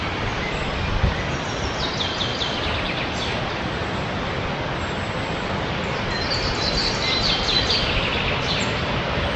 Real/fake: real